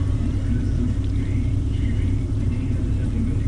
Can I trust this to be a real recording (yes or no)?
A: no